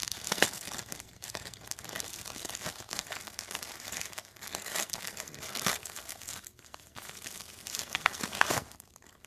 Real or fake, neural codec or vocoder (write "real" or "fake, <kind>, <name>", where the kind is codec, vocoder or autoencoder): fake, codec, SNAC